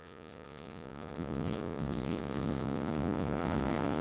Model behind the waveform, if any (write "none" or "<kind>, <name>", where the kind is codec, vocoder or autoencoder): vocoder, Vocos